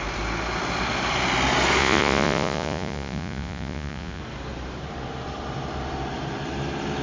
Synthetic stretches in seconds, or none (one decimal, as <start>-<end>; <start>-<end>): 1.8-4.2